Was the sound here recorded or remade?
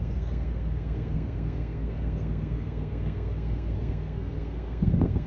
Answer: remade